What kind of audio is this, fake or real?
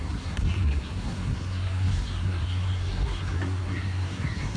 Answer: fake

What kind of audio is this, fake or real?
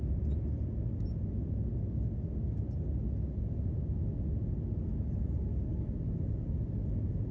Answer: real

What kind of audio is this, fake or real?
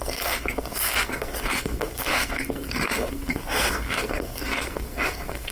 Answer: fake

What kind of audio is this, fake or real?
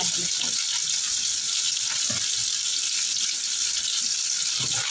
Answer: real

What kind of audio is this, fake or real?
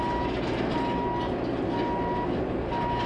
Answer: real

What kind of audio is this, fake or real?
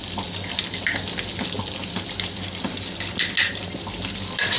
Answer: real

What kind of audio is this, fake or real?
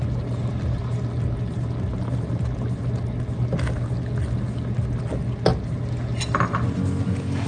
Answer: real